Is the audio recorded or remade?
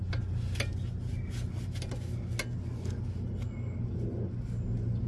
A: recorded